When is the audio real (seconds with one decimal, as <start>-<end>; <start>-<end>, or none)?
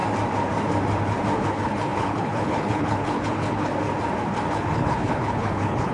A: 0.0-1.5; 3.7-4.5